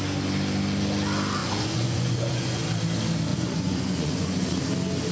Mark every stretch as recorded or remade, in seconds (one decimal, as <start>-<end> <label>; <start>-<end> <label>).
0.0-1.4 recorded; 1.4-2.6 remade; 2.6-3.3 recorded; 3.3-4.6 remade; 4.6-5.1 recorded